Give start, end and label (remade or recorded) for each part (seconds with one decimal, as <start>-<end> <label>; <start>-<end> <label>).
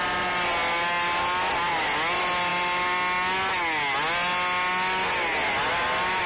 0.0-6.3 recorded